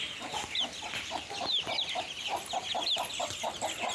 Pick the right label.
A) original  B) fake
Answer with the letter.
A